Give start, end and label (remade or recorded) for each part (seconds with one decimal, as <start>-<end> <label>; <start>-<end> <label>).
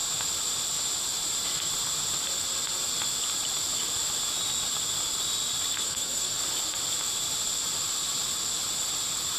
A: 0.0-5.8 recorded; 5.8-6.4 remade; 6.4-9.4 recorded